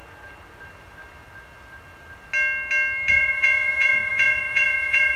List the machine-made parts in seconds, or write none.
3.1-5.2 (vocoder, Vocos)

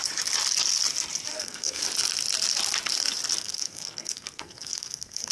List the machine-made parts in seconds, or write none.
1.3-1.8 (codec, SNAC); 3.4-5.3

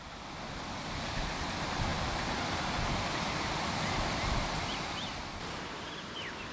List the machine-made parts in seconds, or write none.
none

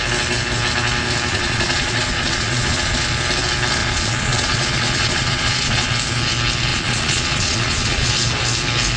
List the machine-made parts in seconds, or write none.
1.3-3.1 (vocoder, Vocos); 3.8-5.9; 6.7-8.1

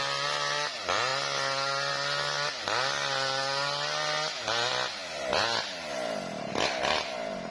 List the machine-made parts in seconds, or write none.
none

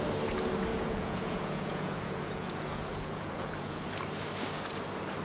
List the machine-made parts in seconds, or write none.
0.7-3.8 (vocoder, Vocos)

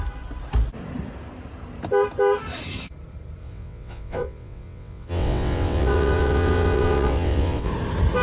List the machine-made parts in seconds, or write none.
3.4-7.7 (vocoder, WaveNeXt)